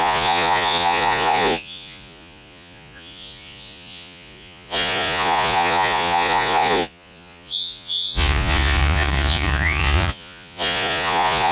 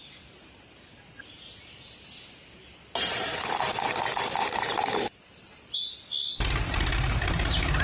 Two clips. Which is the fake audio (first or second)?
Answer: first